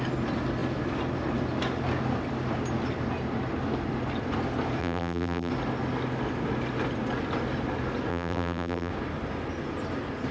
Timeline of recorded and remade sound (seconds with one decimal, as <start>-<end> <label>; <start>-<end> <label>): 0.0-4.8 recorded; 4.8-5.5 remade; 5.5-8.1 recorded; 8.1-8.9 remade; 8.9-10.3 recorded